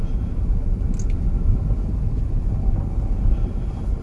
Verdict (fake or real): real